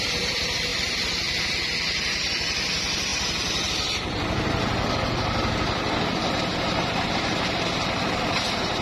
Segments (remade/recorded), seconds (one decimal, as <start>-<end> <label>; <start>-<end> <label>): 0.0-8.8 recorded